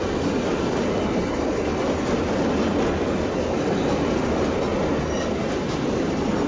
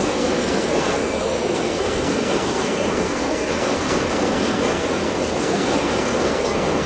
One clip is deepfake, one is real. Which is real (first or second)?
first